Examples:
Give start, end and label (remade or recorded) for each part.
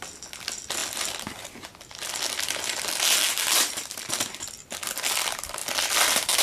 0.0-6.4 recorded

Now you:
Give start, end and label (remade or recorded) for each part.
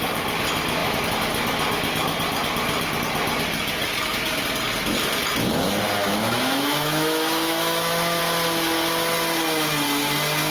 0.0-6.0 recorded; 6.0-8.2 remade; 8.2-10.5 recorded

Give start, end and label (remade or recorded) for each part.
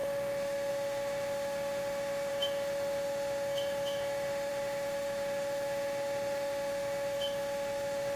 0.0-8.2 remade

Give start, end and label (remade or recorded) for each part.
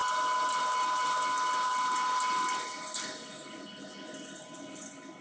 0.0-5.2 recorded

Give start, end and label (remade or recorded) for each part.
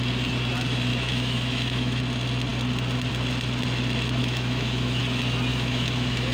0.0-0.9 recorded; 0.9-2.0 remade; 2.0-4.2 recorded; 4.2-5.0 remade; 5.0-5.5 recorded; 5.5-6.3 remade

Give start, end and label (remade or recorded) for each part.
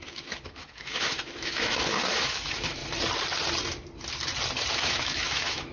0.0-2.8 remade; 2.8-4.7 recorded; 4.7-5.7 remade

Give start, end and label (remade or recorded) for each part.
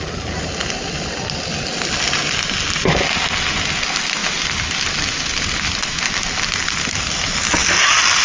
0.0-8.2 recorded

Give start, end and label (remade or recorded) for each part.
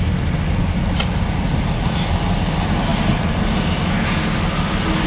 0.0-5.1 recorded